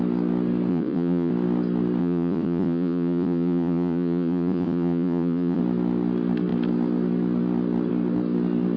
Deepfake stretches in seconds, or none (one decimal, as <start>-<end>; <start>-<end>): 0.7-1.3; 2.0-5.6